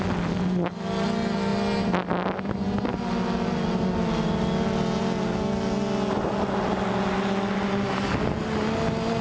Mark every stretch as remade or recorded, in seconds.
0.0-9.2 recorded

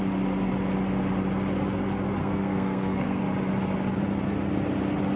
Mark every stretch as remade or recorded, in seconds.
0.0-2.2 recorded; 2.2-3.2 remade; 3.2-5.2 recorded